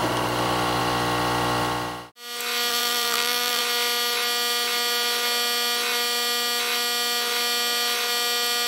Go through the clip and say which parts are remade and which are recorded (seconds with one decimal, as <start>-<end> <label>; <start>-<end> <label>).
0.0-2.7 recorded; 2.7-3.6 remade; 3.6-8.7 recorded